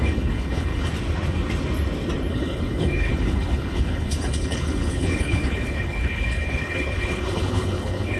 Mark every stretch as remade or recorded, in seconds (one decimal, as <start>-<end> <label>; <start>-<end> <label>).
0.0-0.9 remade; 0.9-2.3 recorded; 2.3-8.2 remade